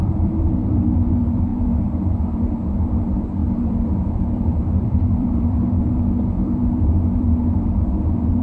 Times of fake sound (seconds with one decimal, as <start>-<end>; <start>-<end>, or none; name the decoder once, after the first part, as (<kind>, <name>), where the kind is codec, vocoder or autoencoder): 0.0-8.4 (vocoder, BigVGAN v2)